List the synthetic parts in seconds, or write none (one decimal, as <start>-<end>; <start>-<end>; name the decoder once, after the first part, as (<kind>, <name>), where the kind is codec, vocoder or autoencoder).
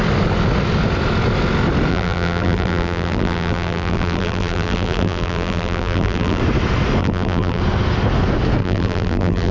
1.9-6.4 (vocoder, BigVGAN v2); 7.0-7.6; 8.6-9.5